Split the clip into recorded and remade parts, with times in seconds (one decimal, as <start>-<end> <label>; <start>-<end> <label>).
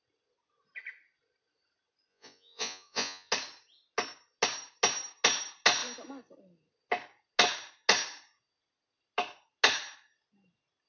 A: 0.0-2.1 recorded; 2.1-3.3 remade; 3.3-10.9 recorded